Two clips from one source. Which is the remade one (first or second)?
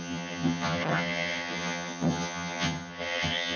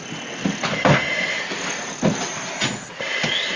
first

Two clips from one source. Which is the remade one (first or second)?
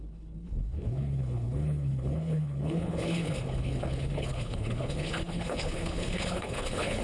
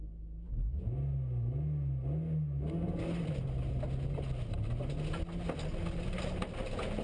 first